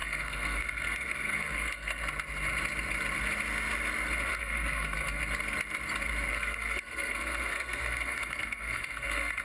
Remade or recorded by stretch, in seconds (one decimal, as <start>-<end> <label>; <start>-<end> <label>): 0.0-2.0 remade; 2.0-4.3 recorded; 4.3-5.2 remade; 5.2-6.3 recorded; 6.3-9.4 remade